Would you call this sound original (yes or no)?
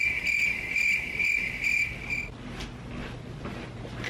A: yes